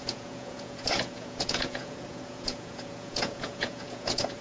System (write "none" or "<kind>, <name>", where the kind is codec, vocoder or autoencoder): vocoder, Vocos